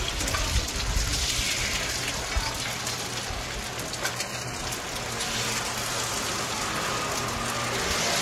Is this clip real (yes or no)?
yes